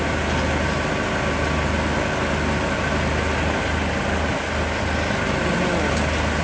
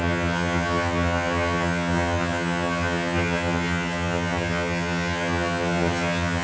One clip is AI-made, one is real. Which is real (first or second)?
first